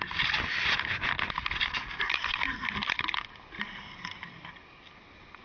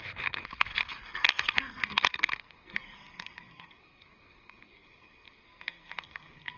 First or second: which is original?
first